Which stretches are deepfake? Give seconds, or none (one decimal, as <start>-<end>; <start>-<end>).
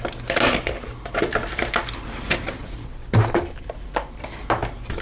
none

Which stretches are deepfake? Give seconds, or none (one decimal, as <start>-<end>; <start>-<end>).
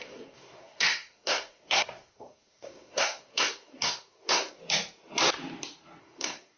0.0-4.6; 6.0-6.6